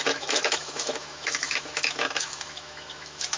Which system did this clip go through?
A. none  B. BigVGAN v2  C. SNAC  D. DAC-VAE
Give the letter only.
D